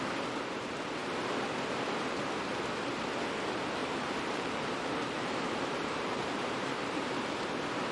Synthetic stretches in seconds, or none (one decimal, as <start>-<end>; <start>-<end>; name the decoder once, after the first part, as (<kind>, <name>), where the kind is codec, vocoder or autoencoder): 3.8-7.1 (vocoder, BigVGAN v2)